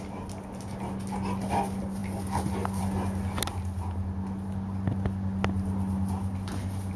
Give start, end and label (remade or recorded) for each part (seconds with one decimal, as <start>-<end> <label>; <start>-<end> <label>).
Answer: 0.0-7.0 recorded